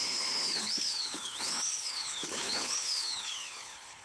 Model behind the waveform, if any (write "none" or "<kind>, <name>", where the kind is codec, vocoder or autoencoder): codec, HILCodec